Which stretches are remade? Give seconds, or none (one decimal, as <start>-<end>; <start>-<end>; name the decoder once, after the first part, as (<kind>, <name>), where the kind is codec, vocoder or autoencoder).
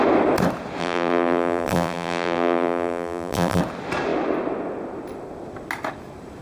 0.8-3.6 (vocoder, BigVGAN v2)